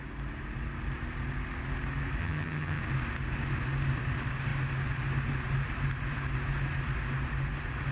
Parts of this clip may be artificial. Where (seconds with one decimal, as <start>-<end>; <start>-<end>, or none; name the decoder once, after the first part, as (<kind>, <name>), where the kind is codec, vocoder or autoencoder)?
2.2-2.8 (vocoder, HiFi-GAN)